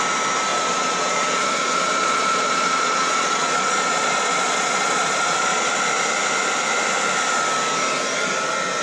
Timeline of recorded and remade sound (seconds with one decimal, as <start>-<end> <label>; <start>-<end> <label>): 0.0-0.5 recorded; 0.5-5.7 remade; 5.7-8.8 recorded

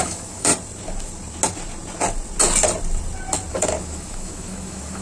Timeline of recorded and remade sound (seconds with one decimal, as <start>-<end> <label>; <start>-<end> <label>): 0.0-0.5 remade; 0.5-3.5 recorded; 3.5-5.0 remade

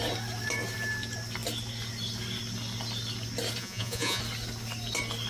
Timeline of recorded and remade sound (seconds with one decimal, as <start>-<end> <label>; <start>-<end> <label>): 0.0-3.6 recorded; 3.6-4.2 remade; 4.2-5.3 recorded

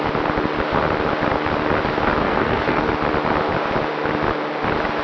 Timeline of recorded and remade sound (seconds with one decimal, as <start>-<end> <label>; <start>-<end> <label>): 0.0-2.2 recorded; 2.2-2.9 remade; 2.9-5.0 recorded